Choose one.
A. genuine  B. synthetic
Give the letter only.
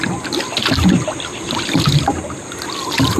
A